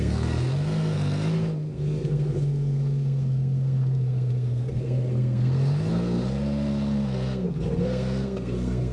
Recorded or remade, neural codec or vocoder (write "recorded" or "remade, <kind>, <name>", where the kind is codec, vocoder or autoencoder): remade, codec, SNAC